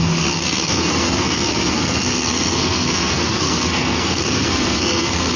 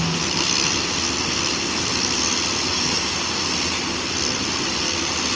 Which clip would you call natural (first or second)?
second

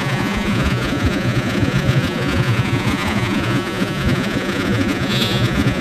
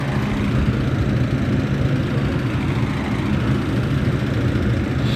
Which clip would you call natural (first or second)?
second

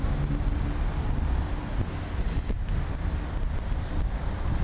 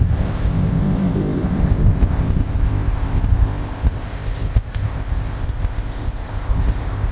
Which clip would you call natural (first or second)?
first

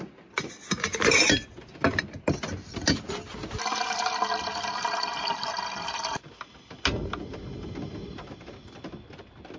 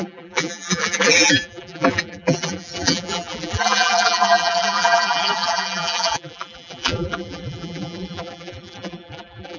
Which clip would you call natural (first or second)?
first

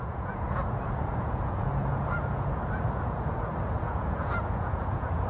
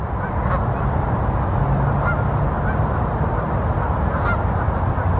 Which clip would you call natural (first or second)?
second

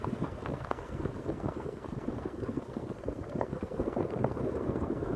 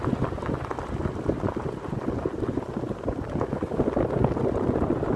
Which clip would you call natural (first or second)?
second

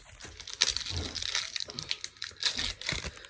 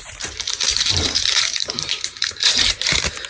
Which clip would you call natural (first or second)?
first